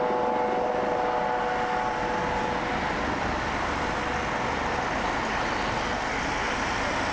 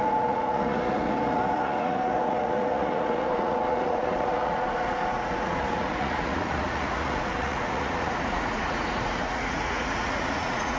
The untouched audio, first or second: first